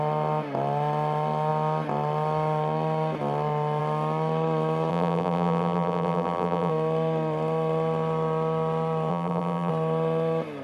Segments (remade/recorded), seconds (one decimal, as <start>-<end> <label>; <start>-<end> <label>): 0.0-4.9 recorded; 4.9-6.7 remade; 6.7-9.1 recorded; 9.1-9.7 remade; 9.7-10.6 recorded